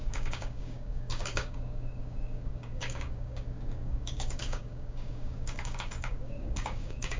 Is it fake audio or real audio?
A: fake